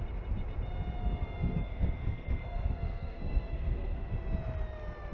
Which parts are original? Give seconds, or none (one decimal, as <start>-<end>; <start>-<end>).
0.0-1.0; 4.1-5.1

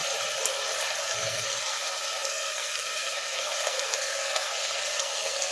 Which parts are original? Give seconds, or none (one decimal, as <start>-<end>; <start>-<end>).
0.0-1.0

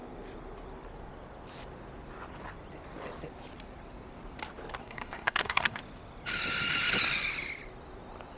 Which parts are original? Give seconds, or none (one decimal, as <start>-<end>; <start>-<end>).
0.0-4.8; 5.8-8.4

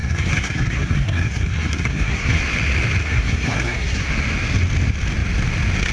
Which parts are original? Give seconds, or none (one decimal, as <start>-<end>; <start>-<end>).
2.4-3.0; 4.1-5.9

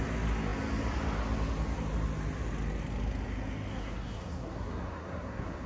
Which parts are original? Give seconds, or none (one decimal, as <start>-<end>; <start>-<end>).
0.0-3.7

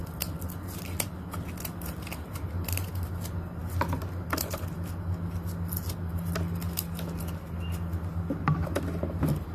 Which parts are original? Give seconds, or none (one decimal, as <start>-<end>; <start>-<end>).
0.0-9.5

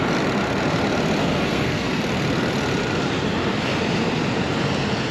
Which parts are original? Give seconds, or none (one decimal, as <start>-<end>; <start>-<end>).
0.0-1.2; 2.0-5.1

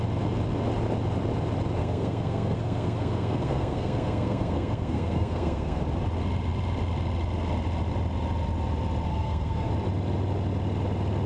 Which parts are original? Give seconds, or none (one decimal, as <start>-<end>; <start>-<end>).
0.0-1.8; 5.8-9.1; 9.7-11.3